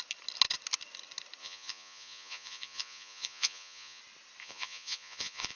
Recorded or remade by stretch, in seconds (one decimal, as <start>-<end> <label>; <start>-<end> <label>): 0.0-1.4 recorded; 1.4-4.0 remade; 4.0-4.4 recorded; 4.4-5.6 remade